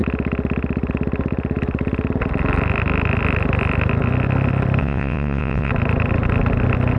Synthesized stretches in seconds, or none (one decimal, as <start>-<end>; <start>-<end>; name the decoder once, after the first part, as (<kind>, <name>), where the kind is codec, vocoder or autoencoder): 4.8-5.7 (vocoder, WaveNeXt)